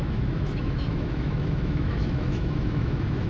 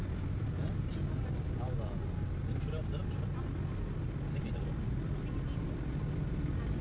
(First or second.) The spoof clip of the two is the first